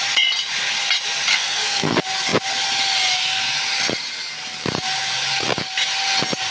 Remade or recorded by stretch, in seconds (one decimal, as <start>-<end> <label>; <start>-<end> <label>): 0.0-1.3 recorded; 1.3-1.9 remade; 1.9-6.5 recorded